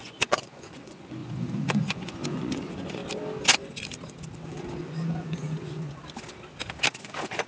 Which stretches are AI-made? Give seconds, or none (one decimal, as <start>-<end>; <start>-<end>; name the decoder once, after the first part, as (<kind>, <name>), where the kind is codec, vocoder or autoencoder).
0.0-3.0 (vocoder, Vocos); 4.5-6.0; 6.9-7.5